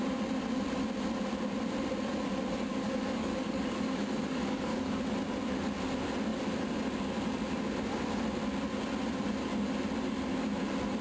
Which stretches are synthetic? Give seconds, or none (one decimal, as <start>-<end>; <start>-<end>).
2.7-5.0